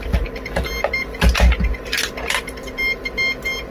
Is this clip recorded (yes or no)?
yes